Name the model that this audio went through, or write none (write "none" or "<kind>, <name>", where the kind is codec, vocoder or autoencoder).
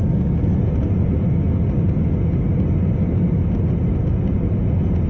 none